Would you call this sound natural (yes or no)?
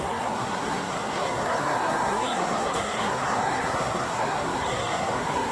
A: no